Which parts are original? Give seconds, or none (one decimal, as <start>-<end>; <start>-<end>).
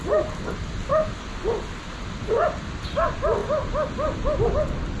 0.0-5.0